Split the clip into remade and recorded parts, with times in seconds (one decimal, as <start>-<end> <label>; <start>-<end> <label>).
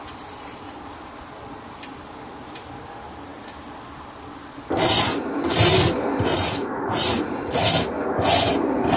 0.0-6.3 recorded; 6.3-7.5 remade; 7.5-9.0 recorded